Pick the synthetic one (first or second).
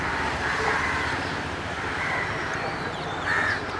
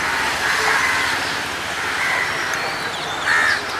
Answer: first